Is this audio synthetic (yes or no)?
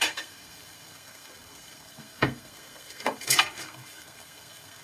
yes